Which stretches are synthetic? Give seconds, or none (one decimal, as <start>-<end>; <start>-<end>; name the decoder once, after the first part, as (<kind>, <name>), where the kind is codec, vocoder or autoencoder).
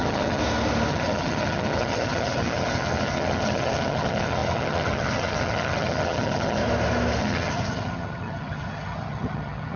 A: 0.0-0.4 (vocoder, HiFi-GAN); 0.9-6.6; 7.2-9.8